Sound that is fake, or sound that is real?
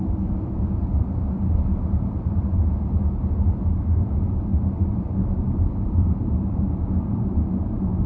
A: fake